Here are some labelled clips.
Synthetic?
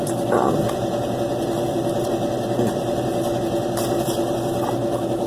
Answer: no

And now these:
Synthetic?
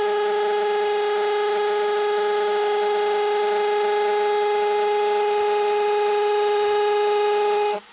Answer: no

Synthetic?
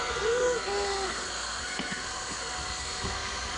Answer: yes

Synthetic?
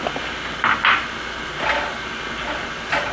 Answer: no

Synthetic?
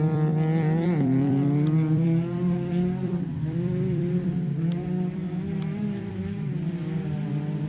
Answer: yes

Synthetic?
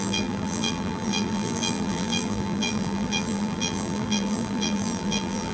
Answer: yes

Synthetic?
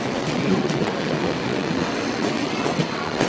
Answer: yes